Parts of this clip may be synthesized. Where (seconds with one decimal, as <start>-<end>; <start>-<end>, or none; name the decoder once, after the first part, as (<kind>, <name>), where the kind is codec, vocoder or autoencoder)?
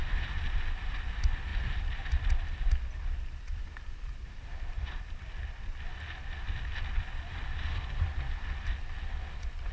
none